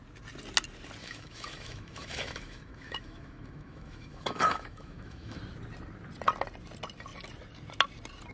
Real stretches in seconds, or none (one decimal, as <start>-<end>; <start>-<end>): 0.0-1.0; 5.4-8.3